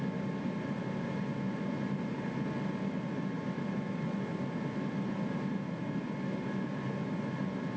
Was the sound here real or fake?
real